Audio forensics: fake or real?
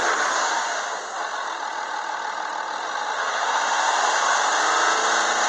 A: real